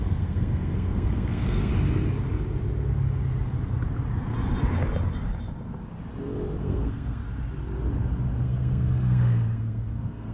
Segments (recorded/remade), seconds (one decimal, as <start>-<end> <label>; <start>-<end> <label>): 0.0-1.7 remade; 1.7-6.6 recorded; 6.6-7.2 remade; 7.2-8.4 recorded; 8.4-10.3 remade

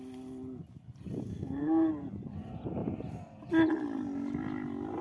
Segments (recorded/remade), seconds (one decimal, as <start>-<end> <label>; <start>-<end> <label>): 0.0-1.3 recorded; 1.3-1.9 remade; 1.9-5.0 recorded

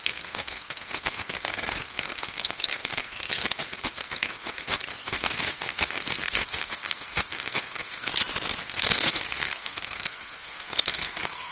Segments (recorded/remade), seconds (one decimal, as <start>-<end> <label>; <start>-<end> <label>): 0.0-8.1 remade; 8.1-8.6 recorded; 8.6-11.5 remade

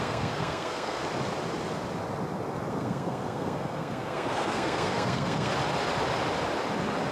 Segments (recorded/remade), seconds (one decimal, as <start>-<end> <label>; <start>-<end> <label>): 0.0-1.0 remade; 1.0-2.7 recorded; 2.7-5.5 remade; 5.5-7.1 recorded

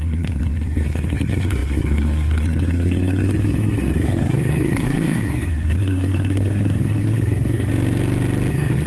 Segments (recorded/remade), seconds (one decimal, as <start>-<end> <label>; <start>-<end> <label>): 0.0-7.7 remade; 7.7-8.5 recorded; 8.5-8.9 remade

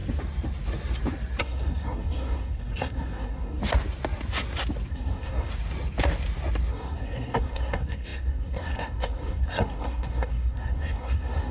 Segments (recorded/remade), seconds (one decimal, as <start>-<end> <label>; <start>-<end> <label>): 0.0-1.4 recorded; 1.4-3.6 remade; 3.6-4.9 recorded; 4.9-5.5 remade; 5.5-6.7 recorded; 6.7-11.5 remade

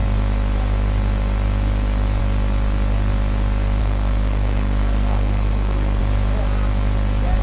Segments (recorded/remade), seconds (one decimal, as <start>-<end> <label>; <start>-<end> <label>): 0.0-3.8 recorded; 3.8-6.0 remade; 6.0-7.4 recorded

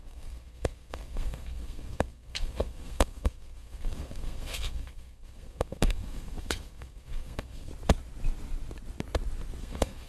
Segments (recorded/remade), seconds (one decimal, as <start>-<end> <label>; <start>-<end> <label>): 0.0-7.7 remade; 7.7-9.6 recorded; 9.6-10.1 remade